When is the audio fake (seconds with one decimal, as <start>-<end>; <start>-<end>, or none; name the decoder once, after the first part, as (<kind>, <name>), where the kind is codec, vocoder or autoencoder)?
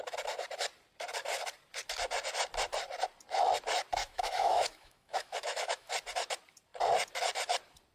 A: 4.0-5.9 (autoencoder, DAC-VAE)